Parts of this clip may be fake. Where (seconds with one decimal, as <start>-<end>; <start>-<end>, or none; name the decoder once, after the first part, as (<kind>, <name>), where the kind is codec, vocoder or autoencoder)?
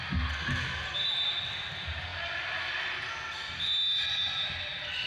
none